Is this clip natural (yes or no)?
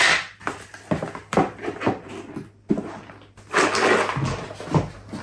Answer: yes